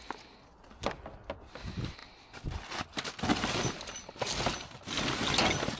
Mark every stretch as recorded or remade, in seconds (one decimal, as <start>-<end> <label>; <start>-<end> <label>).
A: 0.0-5.8 recorded